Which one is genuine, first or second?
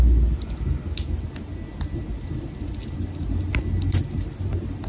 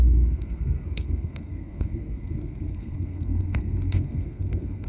first